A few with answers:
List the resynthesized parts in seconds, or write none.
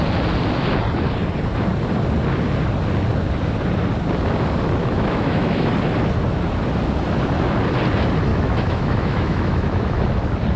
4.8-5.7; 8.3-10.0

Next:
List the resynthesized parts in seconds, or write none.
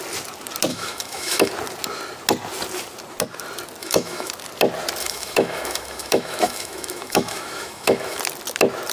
0.7-1.5; 3.8-4.3; 5.0-8.2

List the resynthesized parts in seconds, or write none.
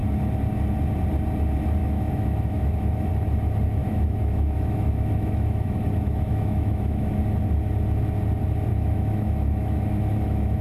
1.8-3.1; 3.8-7.2; 8.7-10.6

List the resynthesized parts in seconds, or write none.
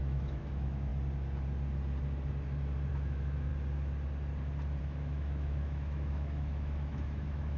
0.0-0.9; 2.9-3.5; 4.8-7.6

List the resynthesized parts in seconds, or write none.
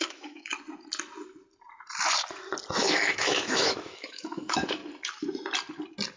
0.0-0.5; 2.8-4.8